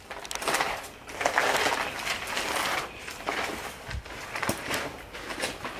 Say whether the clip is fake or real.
real